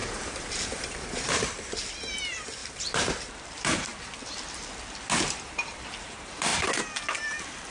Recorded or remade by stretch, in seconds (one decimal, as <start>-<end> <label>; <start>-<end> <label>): 0.0-3.9 remade; 3.9-5.2 recorded; 5.2-6.5 remade; 6.5-7.7 recorded